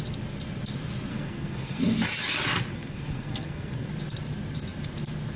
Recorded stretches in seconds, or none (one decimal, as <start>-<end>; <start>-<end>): 0.0-1.1; 1.8-2.7; 3.9-5.4

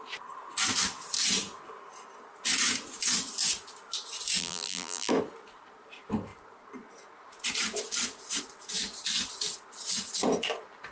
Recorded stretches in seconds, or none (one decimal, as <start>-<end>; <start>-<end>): 0.0-4.4; 5.1-10.9

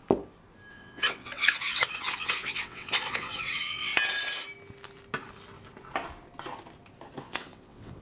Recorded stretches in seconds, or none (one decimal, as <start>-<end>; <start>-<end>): 0.0-0.7; 3.9-7.2

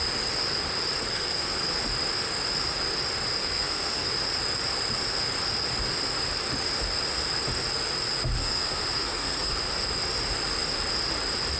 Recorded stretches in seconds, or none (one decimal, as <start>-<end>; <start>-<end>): 0.0-1.1; 1.8-3.4; 4.1-8.4; 9.5-11.6